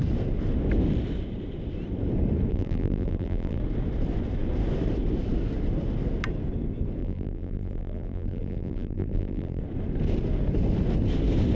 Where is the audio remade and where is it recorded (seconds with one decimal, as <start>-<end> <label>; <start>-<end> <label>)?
0.0-2.5 recorded; 2.5-3.6 remade; 3.6-7.0 recorded; 7.0-9.6 remade; 9.6-11.5 recorded